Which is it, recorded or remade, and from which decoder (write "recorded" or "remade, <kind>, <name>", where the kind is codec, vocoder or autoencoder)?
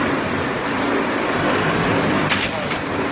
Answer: recorded